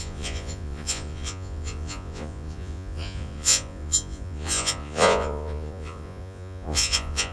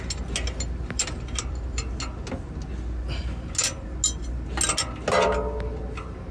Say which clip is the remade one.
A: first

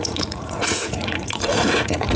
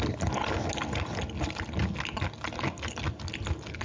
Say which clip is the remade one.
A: first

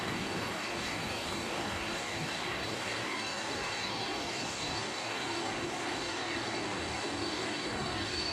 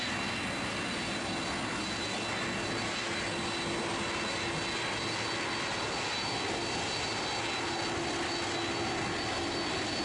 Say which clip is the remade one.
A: first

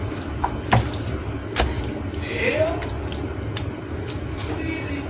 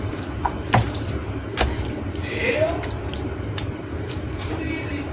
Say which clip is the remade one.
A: second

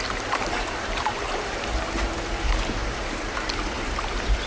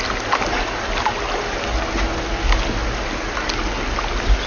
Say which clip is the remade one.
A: first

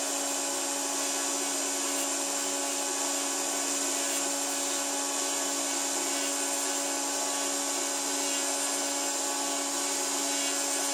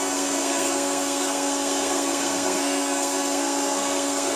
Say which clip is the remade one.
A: second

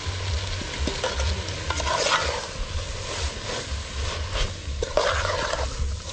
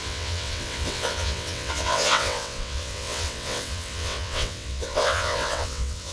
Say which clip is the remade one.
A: second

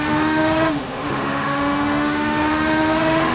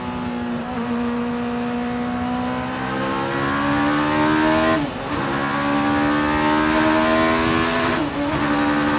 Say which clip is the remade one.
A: first